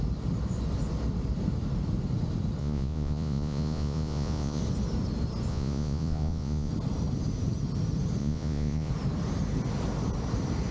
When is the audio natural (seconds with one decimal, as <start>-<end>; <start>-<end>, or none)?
0.0-2.6; 4.6-5.5; 6.7-8.2; 8.9-10.7